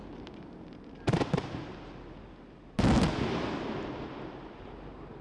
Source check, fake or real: real